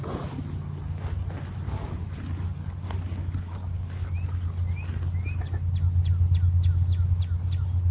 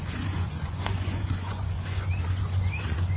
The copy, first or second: second